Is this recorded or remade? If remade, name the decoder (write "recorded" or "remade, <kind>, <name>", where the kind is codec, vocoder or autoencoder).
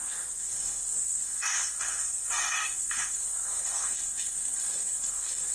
remade, codec, SNAC